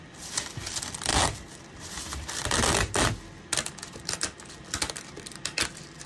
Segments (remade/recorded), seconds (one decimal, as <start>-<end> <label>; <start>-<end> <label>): 0.0-1.1 remade; 1.1-1.7 recorded; 1.7-2.1 remade; 2.1-4.9 recorded; 4.9-6.1 remade

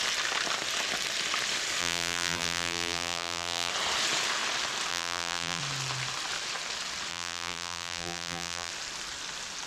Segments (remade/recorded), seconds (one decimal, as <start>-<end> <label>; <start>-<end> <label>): 0.0-1.8 recorded; 1.8-3.7 remade; 3.7-4.9 recorded; 4.9-5.6 remade; 5.6-7.1 recorded; 7.1-8.7 remade; 8.7-9.7 recorded

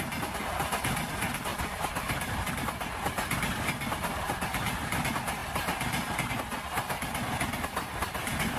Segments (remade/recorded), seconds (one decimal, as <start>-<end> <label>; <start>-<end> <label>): 0.0-1.5 recorded; 1.5-2.5 remade; 2.5-8.6 recorded

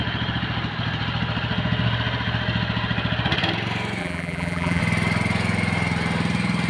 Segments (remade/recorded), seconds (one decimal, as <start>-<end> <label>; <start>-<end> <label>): 0.0-4.0 recorded; 4.0-4.8 remade; 4.8-6.7 recorded

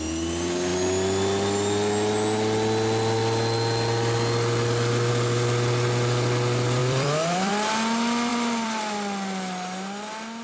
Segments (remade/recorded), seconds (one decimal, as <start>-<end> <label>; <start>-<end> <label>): 0.0-6.8 recorded; 6.8-7.5 remade; 7.5-8.3 recorded; 8.3-8.8 remade; 8.8-10.4 recorded

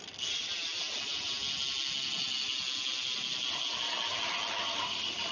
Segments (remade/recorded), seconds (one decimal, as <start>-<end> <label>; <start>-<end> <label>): 0.0-4.6 recorded; 4.6-5.3 remade

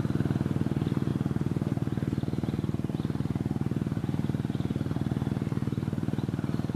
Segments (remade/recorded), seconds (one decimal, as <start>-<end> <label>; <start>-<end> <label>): 0.0-4.7 recorded; 4.7-5.3 remade; 5.3-6.8 recorded

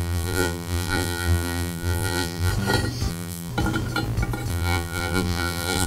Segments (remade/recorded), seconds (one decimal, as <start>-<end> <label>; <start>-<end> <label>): 0.0-2.5 remade; 2.5-3.1 recorded; 3.1-3.5 remade; 3.5-4.5 recorded; 4.5-5.9 remade